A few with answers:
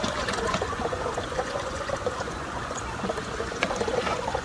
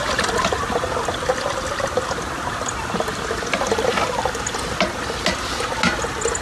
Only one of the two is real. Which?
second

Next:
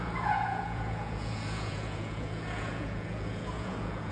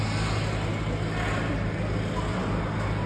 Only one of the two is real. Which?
second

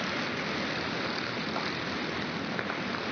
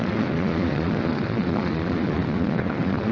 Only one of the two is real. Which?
first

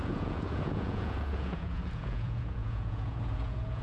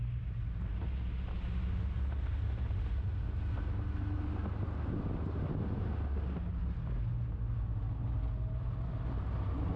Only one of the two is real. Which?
second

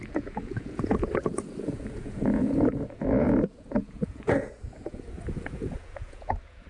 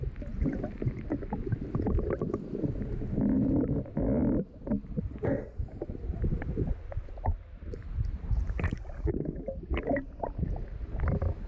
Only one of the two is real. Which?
second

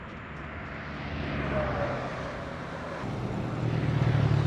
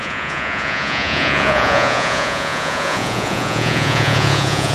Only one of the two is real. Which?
first